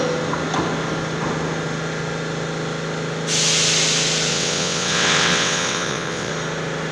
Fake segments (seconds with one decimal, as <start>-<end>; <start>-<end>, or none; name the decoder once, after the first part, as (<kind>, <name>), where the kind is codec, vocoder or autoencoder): 4.3-6.3 (vocoder, WaveNeXt)